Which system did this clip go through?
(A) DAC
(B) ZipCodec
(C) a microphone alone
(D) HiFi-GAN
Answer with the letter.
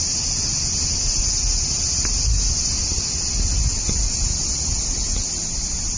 C